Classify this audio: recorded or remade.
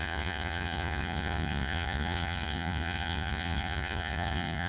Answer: remade